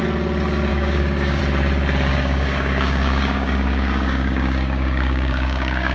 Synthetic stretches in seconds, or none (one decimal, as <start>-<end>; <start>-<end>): 0.7-1.4; 2.1-5.9